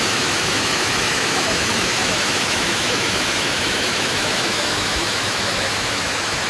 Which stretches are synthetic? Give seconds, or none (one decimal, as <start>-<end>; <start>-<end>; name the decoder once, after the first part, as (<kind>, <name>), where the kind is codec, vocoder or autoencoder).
0.0-6.5 (autoencoder, DAC-VAE)